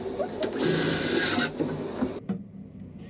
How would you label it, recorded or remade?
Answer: recorded